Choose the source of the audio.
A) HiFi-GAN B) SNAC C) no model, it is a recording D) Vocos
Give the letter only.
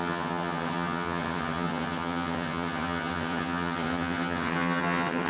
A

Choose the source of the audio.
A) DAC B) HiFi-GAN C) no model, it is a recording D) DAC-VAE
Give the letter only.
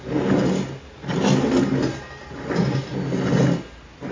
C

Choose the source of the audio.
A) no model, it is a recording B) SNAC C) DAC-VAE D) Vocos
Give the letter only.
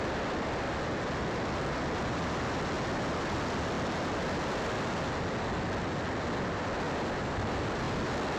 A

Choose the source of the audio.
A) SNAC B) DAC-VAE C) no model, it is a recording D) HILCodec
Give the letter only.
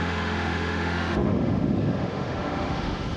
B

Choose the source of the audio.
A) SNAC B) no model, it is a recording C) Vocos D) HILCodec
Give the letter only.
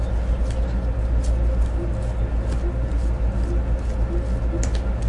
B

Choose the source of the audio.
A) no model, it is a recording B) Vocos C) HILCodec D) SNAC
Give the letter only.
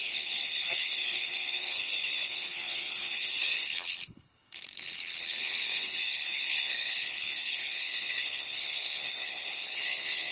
C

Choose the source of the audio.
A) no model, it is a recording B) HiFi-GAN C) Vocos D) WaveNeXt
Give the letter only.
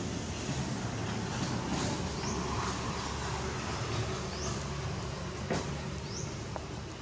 A